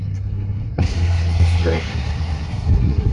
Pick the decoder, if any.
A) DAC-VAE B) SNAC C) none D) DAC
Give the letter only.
B